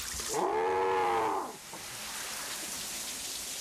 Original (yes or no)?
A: yes